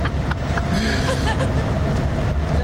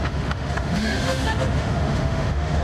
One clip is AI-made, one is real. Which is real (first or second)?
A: first